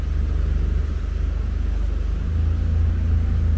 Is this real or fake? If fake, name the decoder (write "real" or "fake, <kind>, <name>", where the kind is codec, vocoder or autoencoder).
real